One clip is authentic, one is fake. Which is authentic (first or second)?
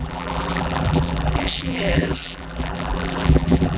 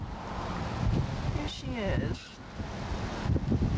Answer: second